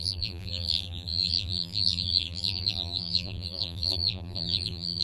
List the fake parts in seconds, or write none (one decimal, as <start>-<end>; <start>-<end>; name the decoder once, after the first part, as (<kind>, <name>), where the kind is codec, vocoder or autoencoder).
0.0-5.0 (vocoder, BigVGAN v2)

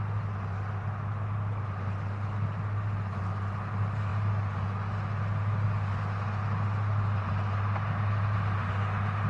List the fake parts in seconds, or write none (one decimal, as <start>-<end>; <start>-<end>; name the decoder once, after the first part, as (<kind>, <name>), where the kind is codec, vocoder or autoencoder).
none

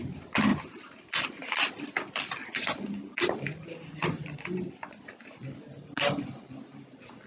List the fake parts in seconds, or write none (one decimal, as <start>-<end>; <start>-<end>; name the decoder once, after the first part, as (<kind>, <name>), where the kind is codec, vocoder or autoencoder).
0.5-1.2 (vocoder, BigVGAN v2)